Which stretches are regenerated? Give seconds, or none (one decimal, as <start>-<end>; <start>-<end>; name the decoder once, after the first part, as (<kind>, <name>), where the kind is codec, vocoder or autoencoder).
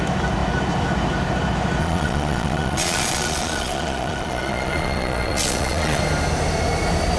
1.8-6.0 (vocoder, Vocos)